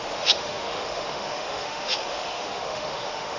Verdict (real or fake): fake